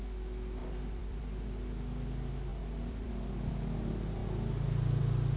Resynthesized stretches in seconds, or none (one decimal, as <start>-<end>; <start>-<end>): 0.6-1.2; 2.5-3.1